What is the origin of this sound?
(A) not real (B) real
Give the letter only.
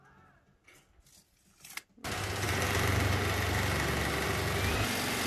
B